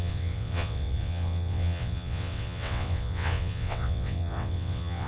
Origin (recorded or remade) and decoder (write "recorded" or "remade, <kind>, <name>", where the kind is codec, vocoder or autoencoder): remade, vocoder, WaveNeXt